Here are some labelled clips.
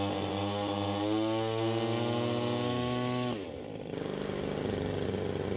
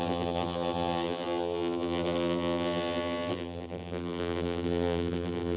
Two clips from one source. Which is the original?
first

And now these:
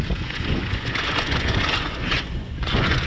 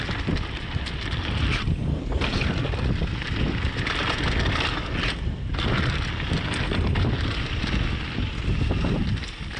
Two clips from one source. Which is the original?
second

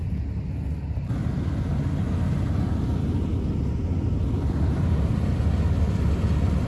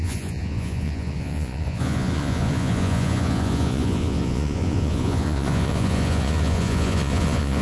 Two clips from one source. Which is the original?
first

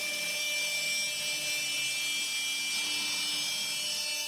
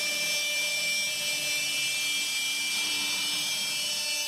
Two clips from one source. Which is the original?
first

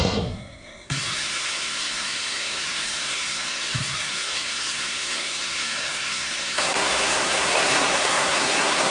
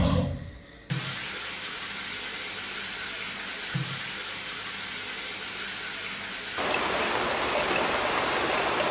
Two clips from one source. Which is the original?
second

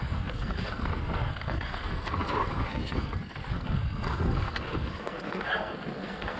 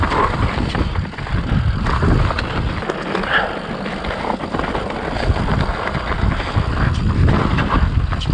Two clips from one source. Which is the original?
second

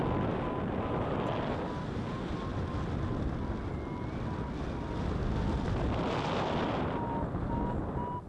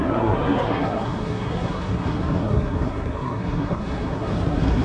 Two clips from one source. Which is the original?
first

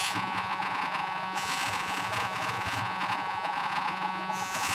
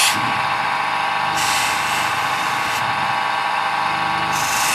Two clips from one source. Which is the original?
second